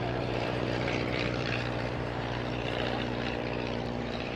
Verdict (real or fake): fake